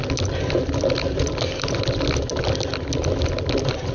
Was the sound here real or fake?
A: real